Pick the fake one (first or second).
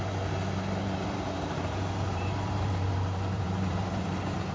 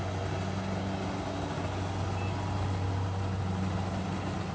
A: first